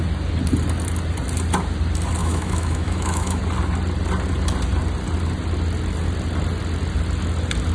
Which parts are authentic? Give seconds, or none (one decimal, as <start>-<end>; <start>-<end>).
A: 0.0-2.2; 3.4-7.7